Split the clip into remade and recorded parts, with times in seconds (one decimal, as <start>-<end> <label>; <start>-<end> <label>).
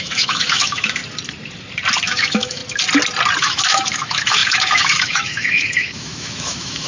0.0-1.0 remade; 1.0-2.0 recorded; 2.0-2.6 remade; 2.6-3.4 recorded; 3.4-6.9 remade